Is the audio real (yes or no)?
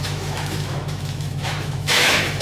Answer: no